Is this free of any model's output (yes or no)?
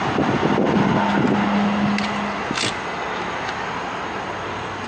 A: yes